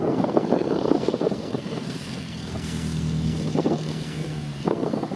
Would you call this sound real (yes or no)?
no